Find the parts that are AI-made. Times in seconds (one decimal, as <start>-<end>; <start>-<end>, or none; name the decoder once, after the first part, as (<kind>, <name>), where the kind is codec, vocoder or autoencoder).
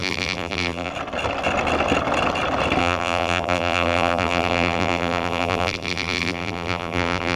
0.0-0.9 (vocoder, BigVGAN v2); 2.8-7.4